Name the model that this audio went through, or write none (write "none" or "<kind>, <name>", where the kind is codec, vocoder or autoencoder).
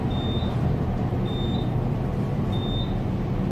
none